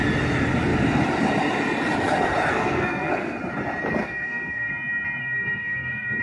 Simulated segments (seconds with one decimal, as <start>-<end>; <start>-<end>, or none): 2.5-3.4; 4.0-4.7; 5.2-6.2

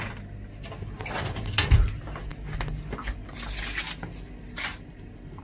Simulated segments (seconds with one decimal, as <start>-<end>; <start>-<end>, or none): none

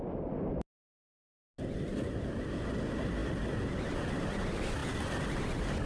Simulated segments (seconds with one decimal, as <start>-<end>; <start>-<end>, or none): none

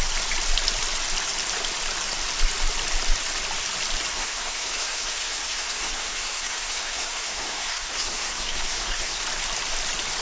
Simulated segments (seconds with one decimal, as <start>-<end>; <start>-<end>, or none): 4.1-9.2

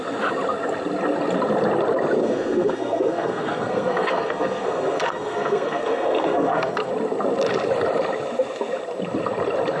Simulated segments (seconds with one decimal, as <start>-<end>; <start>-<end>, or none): 2.2-6.9

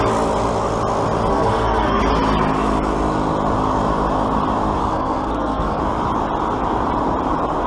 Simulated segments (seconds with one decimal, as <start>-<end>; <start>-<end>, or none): 1.3-2.0; 4.8-5.8